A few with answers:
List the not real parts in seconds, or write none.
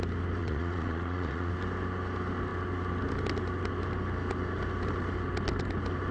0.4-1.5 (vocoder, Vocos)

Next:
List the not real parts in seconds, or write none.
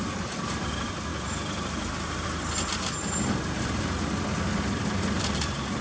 none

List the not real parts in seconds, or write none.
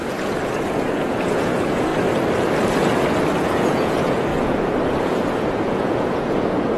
0.0-1.9 (vocoder, Vocos); 3.4-6.8